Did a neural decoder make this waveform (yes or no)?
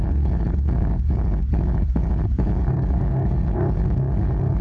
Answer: yes